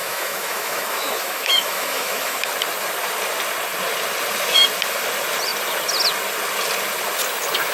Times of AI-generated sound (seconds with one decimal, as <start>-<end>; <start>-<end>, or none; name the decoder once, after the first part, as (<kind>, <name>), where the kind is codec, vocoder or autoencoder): 0.0-2.5 (autoencoder, DAC-VAE)